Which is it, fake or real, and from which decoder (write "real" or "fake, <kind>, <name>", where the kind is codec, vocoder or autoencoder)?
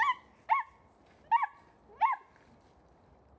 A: real